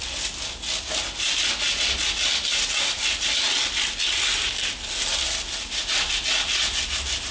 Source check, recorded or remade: recorded